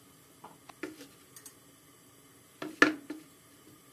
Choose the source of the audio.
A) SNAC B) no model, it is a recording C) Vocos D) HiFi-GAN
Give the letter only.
B